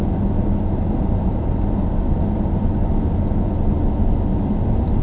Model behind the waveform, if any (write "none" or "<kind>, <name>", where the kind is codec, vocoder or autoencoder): none